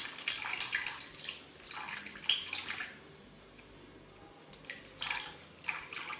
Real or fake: real